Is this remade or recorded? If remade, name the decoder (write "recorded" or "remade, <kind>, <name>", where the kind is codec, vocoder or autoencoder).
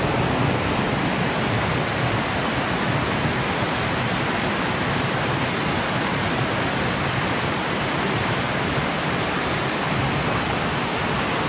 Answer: recorded